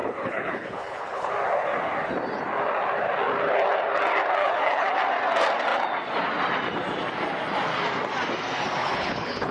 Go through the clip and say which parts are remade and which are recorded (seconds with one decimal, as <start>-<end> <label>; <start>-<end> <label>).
0.0-1.3 remade; 1.3-4.4 recorded; 4.4-5.0 remade; 5.0-8.8 recorded; 8.8-9.5 remade